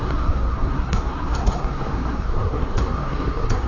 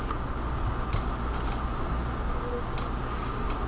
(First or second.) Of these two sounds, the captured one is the second